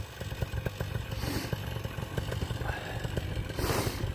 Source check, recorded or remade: recorded